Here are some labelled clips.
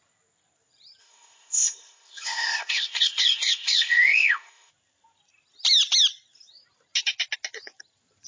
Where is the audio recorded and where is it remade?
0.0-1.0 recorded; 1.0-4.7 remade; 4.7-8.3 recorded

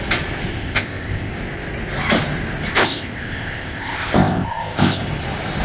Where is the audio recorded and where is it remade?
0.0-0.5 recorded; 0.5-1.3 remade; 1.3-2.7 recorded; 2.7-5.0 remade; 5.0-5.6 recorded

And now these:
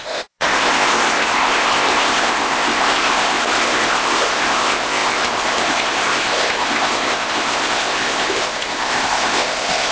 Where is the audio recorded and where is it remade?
0.0-9.9 remade

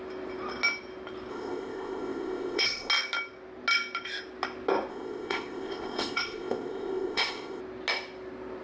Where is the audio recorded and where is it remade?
0.0-1.3 recorded; 1.3-2.9 remade; 2.9-4.9 recorded; 4.9-7.6 remade; 7.6-8.6 recorded